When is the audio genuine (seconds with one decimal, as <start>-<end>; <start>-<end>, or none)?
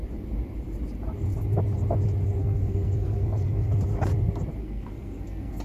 0.0-2.4; 3.7-4.6